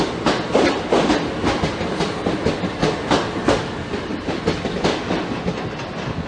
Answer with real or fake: real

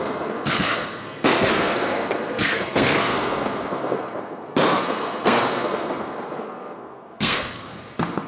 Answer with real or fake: fake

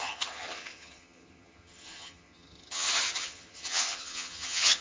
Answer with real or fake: fake